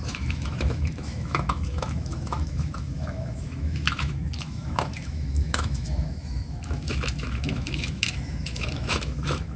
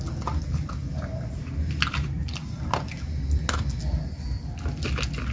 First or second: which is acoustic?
second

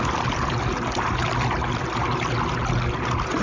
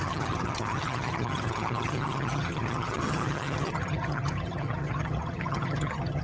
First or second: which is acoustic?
first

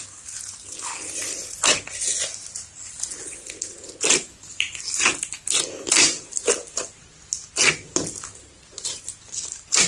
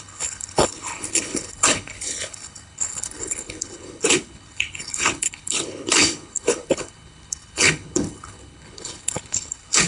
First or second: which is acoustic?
first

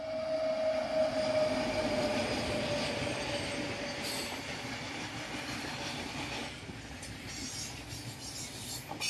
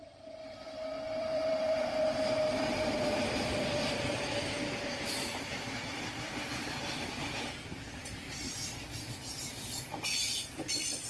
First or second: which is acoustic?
first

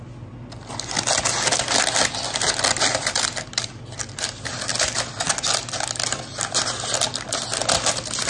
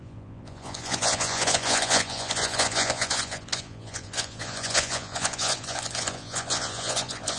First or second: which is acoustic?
first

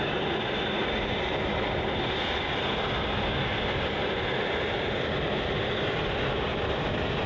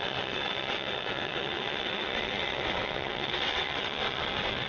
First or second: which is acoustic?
first